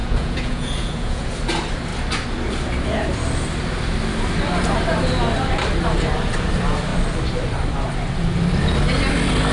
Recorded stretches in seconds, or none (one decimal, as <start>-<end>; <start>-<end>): 1.3-9.5